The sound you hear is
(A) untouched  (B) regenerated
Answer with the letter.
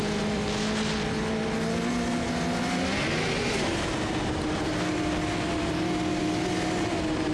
A